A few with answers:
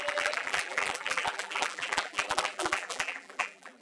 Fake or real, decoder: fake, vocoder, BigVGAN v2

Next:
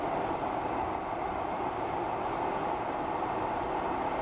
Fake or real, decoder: real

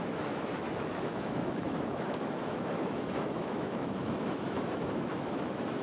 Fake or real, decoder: fake, autoencoder, DAC-VAE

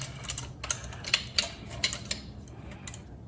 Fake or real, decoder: real